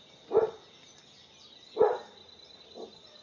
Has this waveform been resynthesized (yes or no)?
no